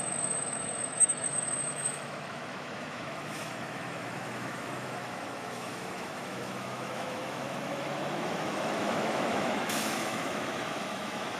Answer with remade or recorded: remade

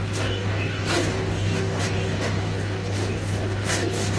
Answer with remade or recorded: remade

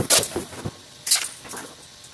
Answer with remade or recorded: recorded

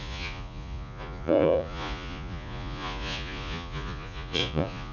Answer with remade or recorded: remade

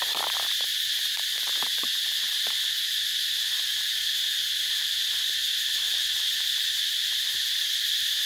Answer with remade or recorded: remade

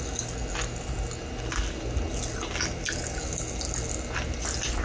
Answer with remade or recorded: recorded